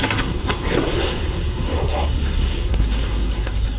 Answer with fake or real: fake